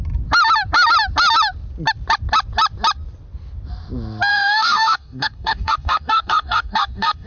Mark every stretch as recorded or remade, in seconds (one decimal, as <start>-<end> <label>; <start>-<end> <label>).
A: 0.0-4.3 recorded; 4.3-7.3 remade